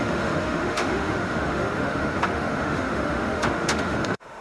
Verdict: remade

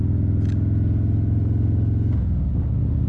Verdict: recorded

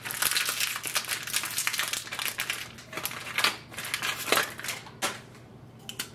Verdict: recorded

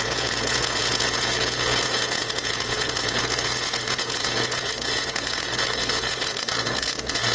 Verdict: remade